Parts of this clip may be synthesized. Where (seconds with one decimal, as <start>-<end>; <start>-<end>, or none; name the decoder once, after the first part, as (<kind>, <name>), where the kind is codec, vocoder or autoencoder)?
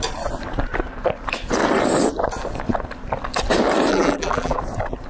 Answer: 3.9-4.6 (vocoder, BigVGAN v2)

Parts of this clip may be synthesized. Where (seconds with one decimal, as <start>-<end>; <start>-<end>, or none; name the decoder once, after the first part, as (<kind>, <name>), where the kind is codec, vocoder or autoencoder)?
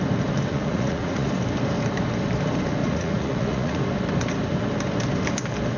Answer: 0.5-1.3 (vocoder, Vocos); 2.8-3.8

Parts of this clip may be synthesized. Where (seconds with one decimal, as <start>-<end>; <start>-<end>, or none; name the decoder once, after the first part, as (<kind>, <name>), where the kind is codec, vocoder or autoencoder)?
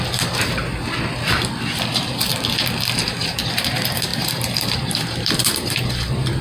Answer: 0.0-0.6 (vocoder, BigVGAN v2); 1.9-2.3; 3.0-6.4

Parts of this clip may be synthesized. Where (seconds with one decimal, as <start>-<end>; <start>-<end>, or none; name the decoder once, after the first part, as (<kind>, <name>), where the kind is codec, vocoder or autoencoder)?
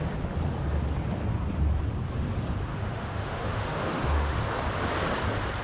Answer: 2.7-4.4 (autoencoder, DAC-VAE)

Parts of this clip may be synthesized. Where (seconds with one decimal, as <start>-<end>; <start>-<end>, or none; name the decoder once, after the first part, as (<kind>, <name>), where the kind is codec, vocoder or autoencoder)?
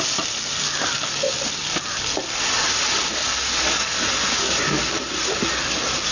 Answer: 3.2-4.0 (codec, DAC); 4.4-5.0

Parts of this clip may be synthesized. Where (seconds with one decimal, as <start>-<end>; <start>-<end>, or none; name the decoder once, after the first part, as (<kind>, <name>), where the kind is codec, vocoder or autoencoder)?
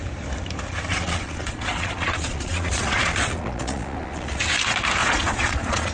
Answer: 0.9-4.4 (vocoder, Vocos); 5.0-5.9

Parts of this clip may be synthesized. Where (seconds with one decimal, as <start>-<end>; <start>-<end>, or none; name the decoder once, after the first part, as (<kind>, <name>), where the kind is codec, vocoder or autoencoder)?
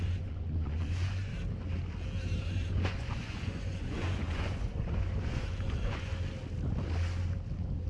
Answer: 0.0-1.3 (vocoder, Vocos); 2.4-6.1